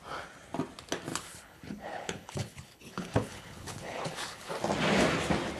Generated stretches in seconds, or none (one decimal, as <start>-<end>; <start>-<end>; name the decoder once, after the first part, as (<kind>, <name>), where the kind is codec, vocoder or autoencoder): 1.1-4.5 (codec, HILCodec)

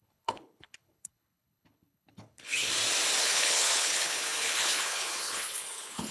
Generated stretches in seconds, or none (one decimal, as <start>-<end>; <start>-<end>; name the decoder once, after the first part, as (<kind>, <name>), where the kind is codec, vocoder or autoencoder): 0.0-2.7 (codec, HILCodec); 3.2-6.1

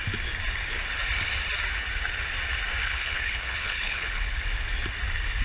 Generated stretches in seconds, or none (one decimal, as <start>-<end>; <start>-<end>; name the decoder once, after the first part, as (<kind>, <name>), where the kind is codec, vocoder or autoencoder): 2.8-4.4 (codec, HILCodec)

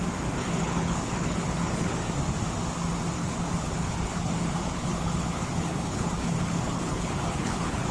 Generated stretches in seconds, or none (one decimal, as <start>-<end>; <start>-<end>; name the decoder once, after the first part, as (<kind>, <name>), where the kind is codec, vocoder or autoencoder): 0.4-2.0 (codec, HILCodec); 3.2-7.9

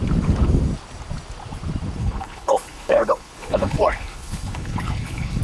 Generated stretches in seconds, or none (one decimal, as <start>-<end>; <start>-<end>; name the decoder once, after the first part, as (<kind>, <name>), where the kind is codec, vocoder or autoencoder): 2.0-5.4 (codec, HILCodec)

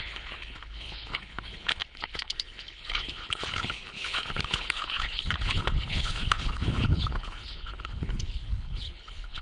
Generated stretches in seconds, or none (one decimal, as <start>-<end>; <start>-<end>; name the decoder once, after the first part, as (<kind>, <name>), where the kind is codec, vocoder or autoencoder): 0.0-9.4 (codec, HILCodec)